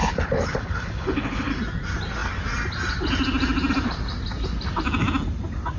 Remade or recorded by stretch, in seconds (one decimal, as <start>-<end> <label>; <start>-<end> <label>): 0.0-1.5 remade; 1.5-5.8 recorded